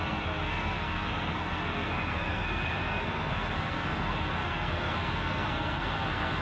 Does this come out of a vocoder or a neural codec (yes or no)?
yes